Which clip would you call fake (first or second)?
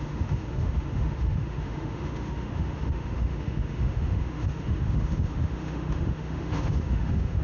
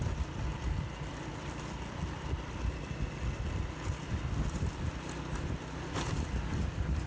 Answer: first